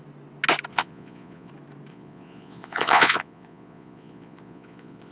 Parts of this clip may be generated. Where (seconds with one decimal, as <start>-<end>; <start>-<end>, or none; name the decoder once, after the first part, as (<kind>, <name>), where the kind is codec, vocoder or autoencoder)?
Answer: 0.7-1.5 (vocoder, Vocos); 1.9-5.1